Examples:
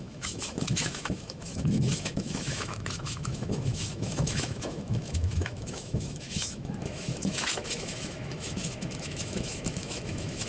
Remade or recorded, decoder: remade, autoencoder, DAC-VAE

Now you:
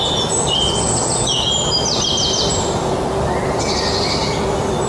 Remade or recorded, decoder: recorded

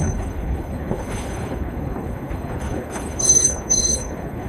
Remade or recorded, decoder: remade, codec, HILCodec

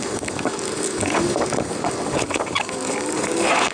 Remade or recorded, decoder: remade, codec, DAC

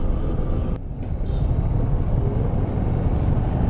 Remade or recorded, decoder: recorded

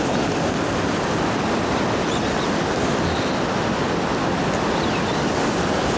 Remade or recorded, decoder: recorded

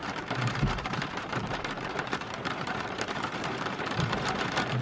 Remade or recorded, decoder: remade, vocoder, BigVGAN v2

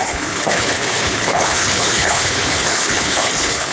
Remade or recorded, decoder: remade, codec, HILCodec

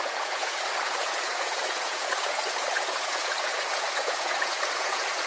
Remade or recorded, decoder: remade, vocoder, Vocos